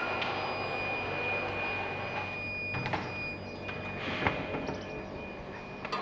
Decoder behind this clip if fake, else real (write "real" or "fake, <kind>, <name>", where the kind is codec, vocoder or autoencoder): real